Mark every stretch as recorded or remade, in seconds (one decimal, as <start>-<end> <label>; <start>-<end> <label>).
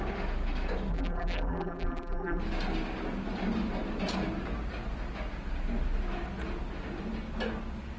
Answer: 0.0-0.9 recorded; 0.9-2.4 remade; 2.4-8.0 recorded